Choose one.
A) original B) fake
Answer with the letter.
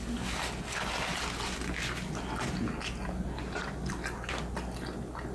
A